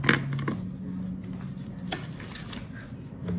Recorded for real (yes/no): yes